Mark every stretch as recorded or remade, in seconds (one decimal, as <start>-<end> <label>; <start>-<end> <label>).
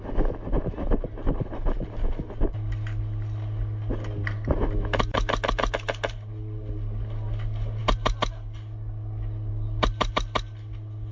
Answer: 0.0-11.1 recorded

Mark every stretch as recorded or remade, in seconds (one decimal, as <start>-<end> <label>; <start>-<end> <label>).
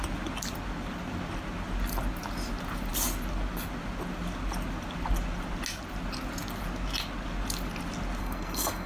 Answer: 0.0-8.2 recorded; 8.2-8.9 remade